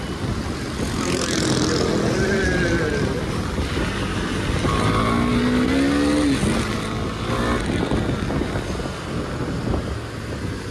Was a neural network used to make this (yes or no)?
no